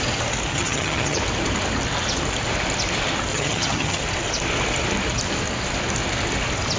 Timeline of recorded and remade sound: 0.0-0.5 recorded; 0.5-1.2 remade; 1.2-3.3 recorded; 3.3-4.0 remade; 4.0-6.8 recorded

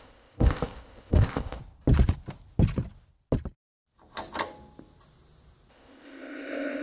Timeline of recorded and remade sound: 0.0-1.6 remade; 1.6-5.7 recorded; 5.7-6.8 remade

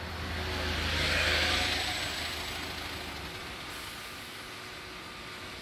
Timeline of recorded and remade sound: 0.0-5.6 recorded

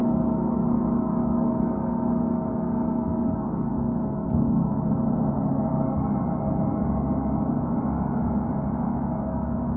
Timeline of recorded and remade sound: 0.0-4.7 remade; 4.7-5.5 recorded; 5.5-9.8 remade

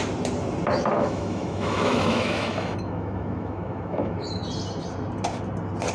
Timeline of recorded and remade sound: 0.0-0.9 recorded; 0.9-4.4 remade; 4.4-5.9 recorded

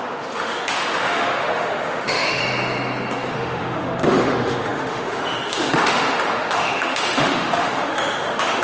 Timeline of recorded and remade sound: 0.0-2.4 remade; 2.4-3.3 recorded; 3.3-8.6 remade

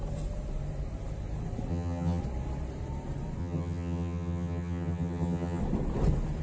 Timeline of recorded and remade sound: 0.0-1.7 recorded; 1.7-2.2 remade; 2.2-3.4 recorded; 3.4-5.6 remade; 5.6-6.4 recorded

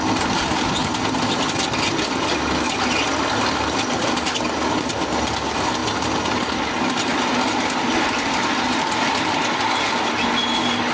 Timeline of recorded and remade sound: 0.0-10.9 recorded